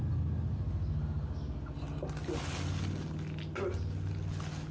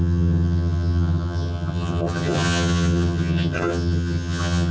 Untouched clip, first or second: first